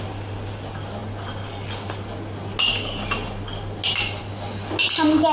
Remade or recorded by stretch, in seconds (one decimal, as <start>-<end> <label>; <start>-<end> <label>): 0.0-5.3 recorded

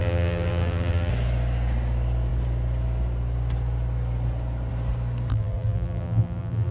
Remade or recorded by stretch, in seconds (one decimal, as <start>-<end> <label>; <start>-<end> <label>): 0.0-1.1 remade; 1.1-5.3 recorded; 5.3-6.7 remade